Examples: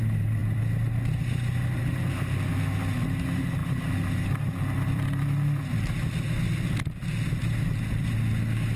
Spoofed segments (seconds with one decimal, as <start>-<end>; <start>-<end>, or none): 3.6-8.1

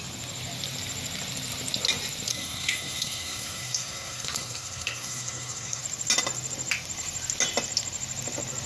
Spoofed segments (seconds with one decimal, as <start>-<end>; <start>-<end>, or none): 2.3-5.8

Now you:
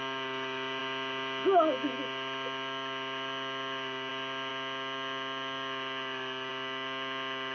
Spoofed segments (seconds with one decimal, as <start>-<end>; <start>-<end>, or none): none

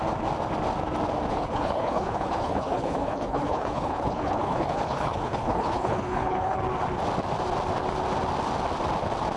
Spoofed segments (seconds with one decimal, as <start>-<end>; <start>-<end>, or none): 1.3-6.6

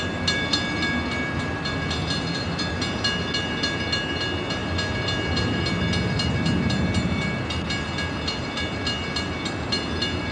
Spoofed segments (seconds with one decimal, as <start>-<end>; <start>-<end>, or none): none

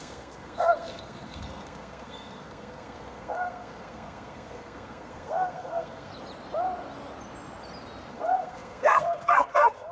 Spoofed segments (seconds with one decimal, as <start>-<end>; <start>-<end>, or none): 0.0-6.1; 8.1-9.9

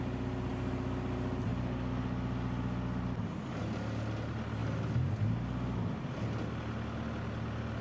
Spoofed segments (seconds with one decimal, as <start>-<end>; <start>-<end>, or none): none

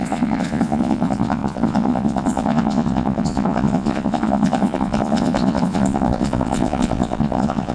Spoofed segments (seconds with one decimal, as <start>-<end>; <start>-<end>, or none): 0.0-7.7